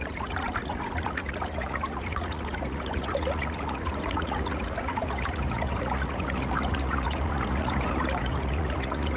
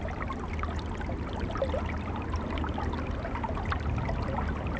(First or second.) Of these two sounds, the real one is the second